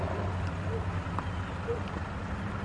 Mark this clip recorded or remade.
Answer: recorded